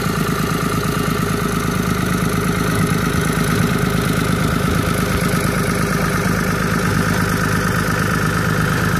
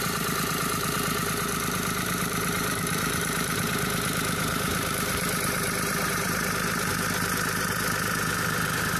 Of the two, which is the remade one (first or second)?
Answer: second